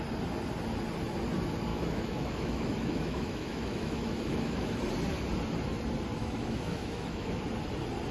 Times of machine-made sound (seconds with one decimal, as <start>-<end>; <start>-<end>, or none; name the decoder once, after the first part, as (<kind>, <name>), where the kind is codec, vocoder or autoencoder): 1.7-4.8 (autoencoder, DAC-VAE); 6.2-7.4